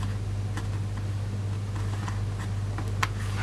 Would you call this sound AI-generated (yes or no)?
no